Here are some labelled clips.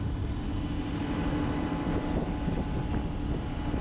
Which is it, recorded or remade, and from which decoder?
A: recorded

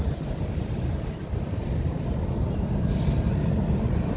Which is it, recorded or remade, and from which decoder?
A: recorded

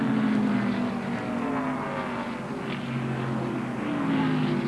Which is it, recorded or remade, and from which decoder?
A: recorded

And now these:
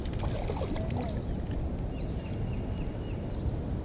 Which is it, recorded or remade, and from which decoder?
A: recorded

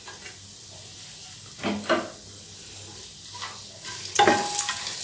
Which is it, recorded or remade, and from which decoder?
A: recorded